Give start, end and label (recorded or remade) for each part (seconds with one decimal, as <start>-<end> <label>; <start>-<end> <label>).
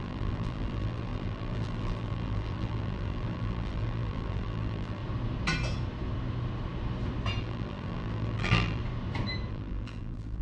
0.0-5.0 remade; 5.0-7.4 recorded; 7.4-8.8 remade; 8.8-9.5 recorded; 9.5-10.4 remade